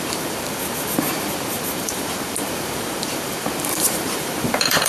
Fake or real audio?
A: fake